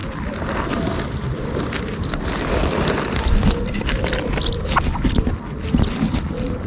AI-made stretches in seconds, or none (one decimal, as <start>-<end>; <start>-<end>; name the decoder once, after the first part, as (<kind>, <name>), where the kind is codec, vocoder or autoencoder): 0.0-4.0 (vocoder, BigVGAN v2)